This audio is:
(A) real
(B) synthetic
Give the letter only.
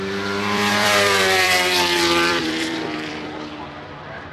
B